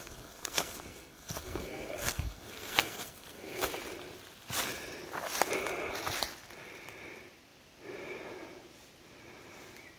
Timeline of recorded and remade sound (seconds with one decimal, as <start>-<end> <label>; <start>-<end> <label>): 0.0-3.7 remade; 3.7-10.0 recorded

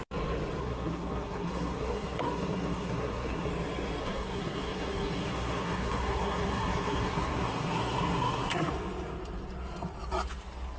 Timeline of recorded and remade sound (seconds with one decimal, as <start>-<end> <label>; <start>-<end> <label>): 0.0-0.6 recorded; 0.6-3.5 remade; 3.5-4.0 recorded; 4.0-8.7 remade; 8.7-10.8 recorded

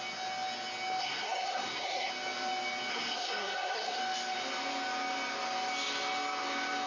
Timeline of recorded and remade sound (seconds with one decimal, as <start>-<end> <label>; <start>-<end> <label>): 0.0-1.0 recorded; 1.0-2.1 remade; 2.1-2.9 recorded; 2.9-4.0 remade; 4.0-6.9 recorded

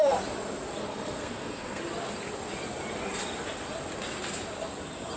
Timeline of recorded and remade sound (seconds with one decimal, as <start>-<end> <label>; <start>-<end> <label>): 0.0-0.8 recorded; 0.8-1.8 remade; 1.8-5.2 recorded